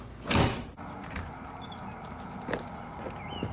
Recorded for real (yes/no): yes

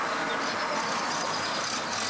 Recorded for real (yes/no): yes